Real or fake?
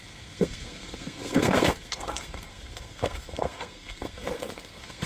fake